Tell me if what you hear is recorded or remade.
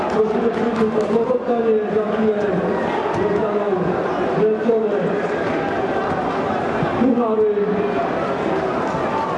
recorded